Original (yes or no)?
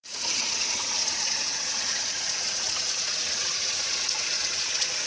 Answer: no